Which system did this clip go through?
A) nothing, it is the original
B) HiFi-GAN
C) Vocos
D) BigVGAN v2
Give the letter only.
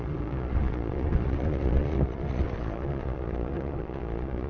C